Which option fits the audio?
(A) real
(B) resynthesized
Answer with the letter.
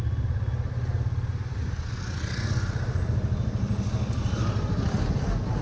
A